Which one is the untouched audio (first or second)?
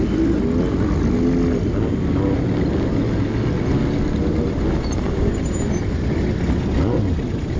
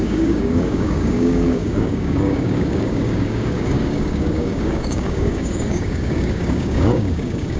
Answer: first